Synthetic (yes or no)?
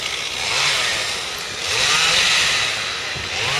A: no